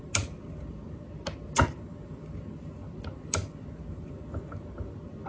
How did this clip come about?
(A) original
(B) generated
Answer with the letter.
A